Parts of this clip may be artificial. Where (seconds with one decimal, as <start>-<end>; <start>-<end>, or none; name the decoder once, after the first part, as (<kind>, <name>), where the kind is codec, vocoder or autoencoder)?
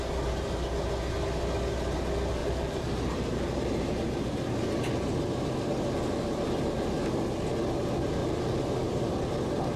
2.4-4.5 (vocoder, BigVGAN v2); 8.2-9.1